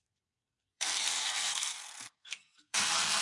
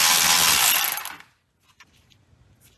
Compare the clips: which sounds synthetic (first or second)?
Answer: first